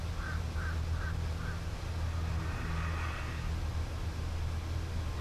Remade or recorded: recorded